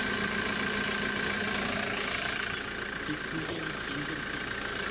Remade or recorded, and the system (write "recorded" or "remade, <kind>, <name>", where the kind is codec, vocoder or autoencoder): recorded